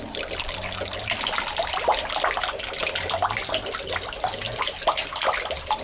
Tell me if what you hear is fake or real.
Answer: real